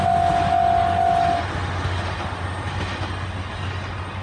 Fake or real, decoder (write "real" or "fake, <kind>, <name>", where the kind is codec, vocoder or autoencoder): real